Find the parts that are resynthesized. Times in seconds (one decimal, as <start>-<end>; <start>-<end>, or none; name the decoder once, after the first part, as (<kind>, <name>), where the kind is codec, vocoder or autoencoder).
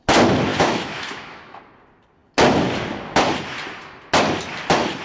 0.5-1.6 (autoencoder, DAC-VAE)